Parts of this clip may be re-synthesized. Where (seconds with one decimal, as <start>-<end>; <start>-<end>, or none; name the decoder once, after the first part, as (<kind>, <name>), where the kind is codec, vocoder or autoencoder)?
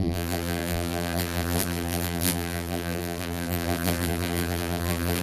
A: 0.0-5.2 (vocoder, BigVGAN v2)